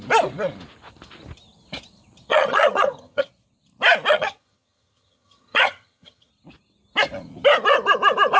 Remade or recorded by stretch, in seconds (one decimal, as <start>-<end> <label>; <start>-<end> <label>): 0.0-2.3 recorded; 2.3-3.3 remade; 3.3-4.1 recorded; 4.1-6.3 remade; 6.3-8.4 recorded

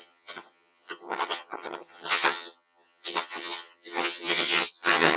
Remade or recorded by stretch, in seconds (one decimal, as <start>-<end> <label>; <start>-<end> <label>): 0.0-5.2 remade

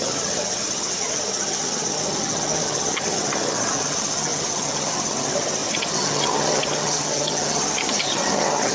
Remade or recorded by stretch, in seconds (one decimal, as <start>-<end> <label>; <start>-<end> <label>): 0.0-8.7 remade

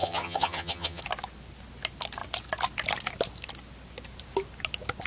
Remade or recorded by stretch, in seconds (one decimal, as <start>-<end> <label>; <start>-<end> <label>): 0.0-1.0 remade; 1.0-5.1 recorded

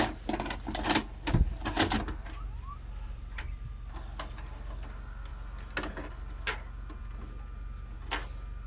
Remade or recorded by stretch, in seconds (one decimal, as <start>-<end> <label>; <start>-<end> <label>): 0.0-8.7 recorded